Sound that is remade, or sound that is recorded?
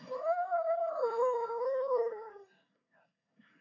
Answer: remade